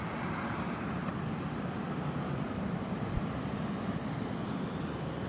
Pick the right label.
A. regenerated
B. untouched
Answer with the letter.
A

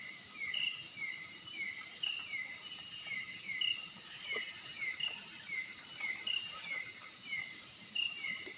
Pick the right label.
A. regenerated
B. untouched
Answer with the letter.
A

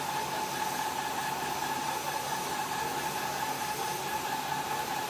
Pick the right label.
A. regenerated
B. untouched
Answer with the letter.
A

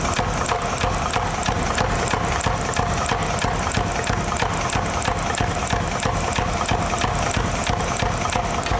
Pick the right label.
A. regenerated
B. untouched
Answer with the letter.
B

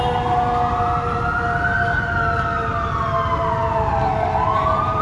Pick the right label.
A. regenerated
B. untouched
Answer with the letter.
B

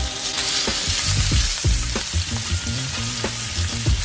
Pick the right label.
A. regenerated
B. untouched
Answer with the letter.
B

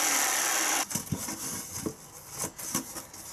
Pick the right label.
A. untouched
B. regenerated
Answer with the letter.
A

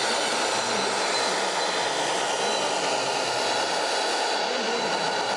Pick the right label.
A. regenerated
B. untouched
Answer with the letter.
B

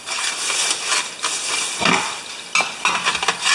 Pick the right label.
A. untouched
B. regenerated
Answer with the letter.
A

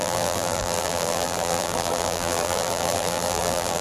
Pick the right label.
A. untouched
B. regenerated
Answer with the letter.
B